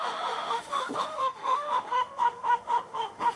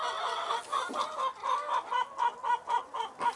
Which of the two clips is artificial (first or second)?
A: first